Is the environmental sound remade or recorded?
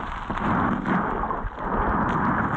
recorded